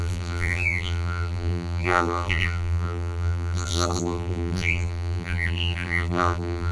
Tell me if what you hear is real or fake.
fake